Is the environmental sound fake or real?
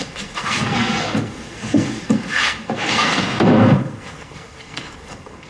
fake